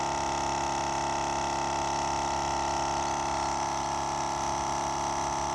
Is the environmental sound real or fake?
real